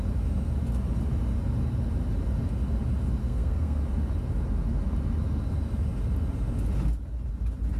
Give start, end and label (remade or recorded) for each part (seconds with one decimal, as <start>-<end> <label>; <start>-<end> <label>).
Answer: 0.0-3.2 recorded; 3.2-3.8 remade; 3.8-7.8 recorded